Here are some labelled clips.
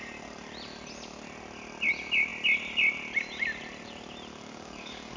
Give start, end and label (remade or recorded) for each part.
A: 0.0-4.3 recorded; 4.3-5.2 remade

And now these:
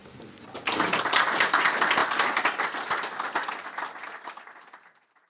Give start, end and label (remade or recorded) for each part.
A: 0.0-5.3 recorded

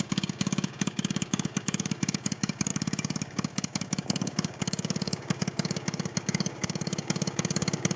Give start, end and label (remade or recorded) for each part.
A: 0.0-8.0 remade

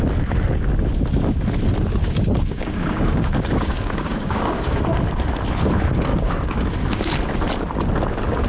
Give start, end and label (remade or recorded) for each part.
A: 0.0-2.0 recorded; 2.0-4.8 remade; 4.8-6.1 recorded; 6.1-7.1 remade; 7.1-8.5 recorded

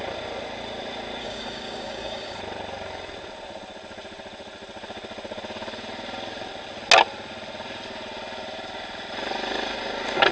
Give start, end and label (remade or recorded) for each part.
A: 0.0-1.2 recorded; 1.2-2.4 remade; 2.4-10.3 recorded

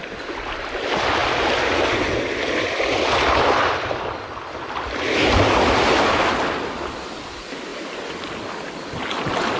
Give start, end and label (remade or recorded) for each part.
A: 0.0-9.6 recorded

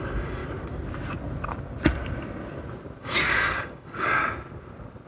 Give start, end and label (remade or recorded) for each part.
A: 0.0-0.4 remade; 0.4-3.0 recorded; 3.0-4.2 remade; 4.2-5.1 recorded